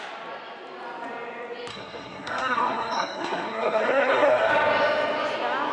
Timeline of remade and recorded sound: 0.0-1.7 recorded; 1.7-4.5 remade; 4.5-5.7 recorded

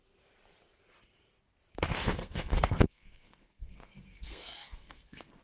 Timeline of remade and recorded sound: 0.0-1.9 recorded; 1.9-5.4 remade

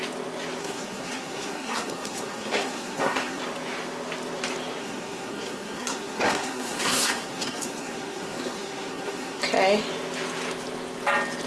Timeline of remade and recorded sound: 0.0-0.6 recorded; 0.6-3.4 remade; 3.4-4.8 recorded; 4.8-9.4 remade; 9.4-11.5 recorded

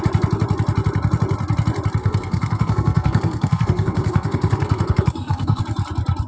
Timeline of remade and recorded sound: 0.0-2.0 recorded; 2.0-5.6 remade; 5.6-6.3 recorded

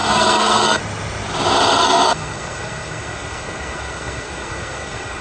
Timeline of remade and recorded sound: 0.0-0.8 remade; 0.8-1.8 recorded; 1.8-5.2 remade

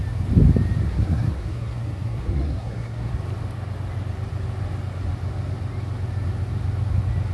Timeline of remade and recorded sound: 0.0-0.8 recorded; 0.8-3.1 remade; 3.1-7.3 recorded

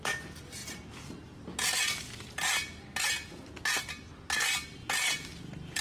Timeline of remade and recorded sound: 0.0-5.8 recorded

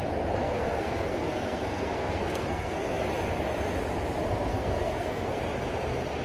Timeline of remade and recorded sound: 0.0-0.4 recorded; 0.4-3.0 remade; 3.0-4.5 recorded; 4.5-5.4 remade; 5.4-6.2 recorded